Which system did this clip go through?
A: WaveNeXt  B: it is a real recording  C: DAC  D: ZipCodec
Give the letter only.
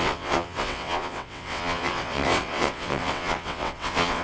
A